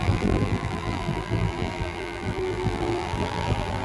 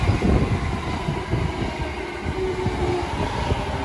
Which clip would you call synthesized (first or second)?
first